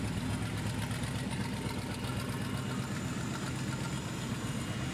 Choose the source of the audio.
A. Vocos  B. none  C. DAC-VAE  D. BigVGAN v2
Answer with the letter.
B